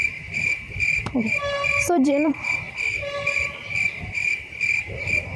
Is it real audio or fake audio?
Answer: fake